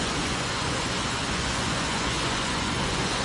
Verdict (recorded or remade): remade